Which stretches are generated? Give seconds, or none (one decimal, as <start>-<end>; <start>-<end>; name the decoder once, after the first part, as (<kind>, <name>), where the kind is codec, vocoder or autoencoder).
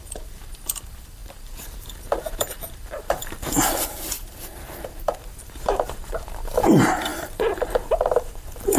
0.0-8.8 (vocoder, BigVGAN v2)